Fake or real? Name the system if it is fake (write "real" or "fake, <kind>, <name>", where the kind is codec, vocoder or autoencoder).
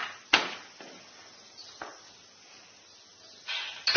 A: real